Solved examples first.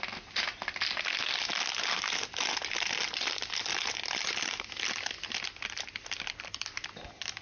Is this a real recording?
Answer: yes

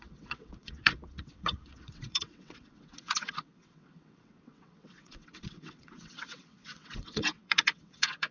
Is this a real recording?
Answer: no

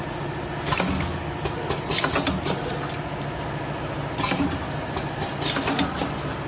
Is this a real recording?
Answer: yes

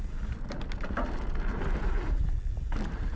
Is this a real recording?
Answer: yes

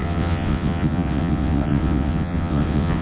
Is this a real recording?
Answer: no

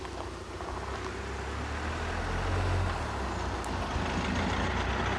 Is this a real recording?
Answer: yes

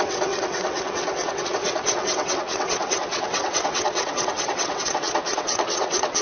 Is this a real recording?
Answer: no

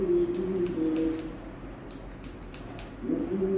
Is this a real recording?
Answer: yes